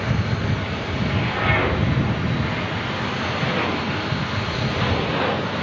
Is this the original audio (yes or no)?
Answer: yes